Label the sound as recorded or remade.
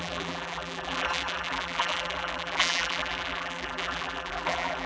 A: remade